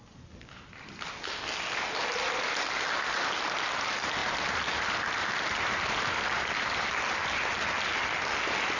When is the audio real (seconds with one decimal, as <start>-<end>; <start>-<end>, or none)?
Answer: 0.0-8.8